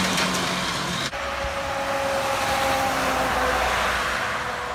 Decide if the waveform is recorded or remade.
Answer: recorded